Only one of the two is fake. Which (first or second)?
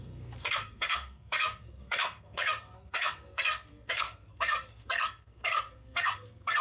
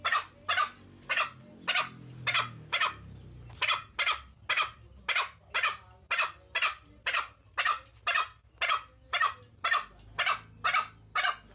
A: first